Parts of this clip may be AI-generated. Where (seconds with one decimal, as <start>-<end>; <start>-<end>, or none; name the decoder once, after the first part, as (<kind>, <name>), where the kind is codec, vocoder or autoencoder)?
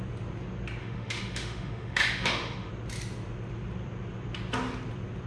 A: 0.8-2.7 (autoencoder, DAC-VAE)